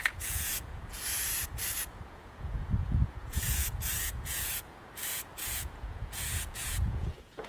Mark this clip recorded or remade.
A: remade